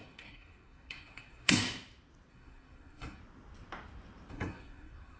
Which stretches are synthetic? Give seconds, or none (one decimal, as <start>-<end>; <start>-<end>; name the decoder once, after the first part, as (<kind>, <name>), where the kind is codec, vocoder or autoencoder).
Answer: 0.0-1.6 (codec, SNAC); 2.3-3.2; 4.3-5.2